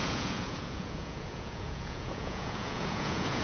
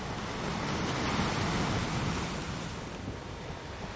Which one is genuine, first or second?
second